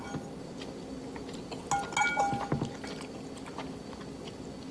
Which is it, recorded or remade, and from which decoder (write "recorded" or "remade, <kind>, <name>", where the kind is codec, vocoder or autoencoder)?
recorded